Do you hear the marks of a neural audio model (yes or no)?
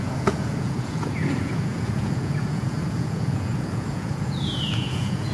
yes